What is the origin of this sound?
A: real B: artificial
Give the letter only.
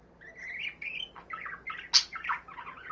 A